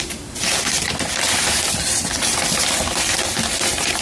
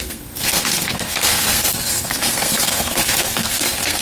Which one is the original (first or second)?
first